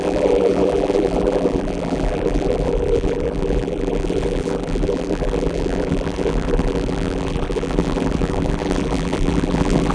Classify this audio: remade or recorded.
remade